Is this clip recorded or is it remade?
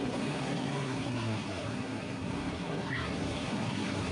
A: remade